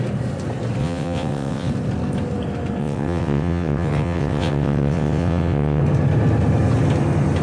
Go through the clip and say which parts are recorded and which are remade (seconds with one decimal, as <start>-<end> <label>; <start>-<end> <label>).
0.0-0.8 recorded; 0.8-1.7 remade; 1.7-2.8 recorded; 2.8-5.8 remade; 5.8-7.4 recorded